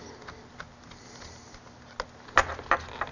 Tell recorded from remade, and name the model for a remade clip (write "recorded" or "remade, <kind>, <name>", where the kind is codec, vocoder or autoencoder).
recorded